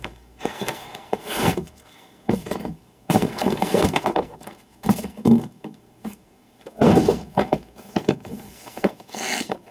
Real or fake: fake